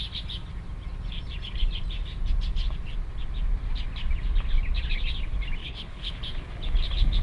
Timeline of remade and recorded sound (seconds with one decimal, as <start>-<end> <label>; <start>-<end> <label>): 0.0-5.6 recorded; 5.6-6.1 remade; 6.1-7.2 recorded